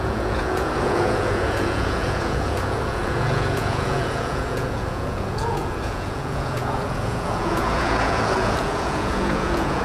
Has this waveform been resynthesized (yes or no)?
yes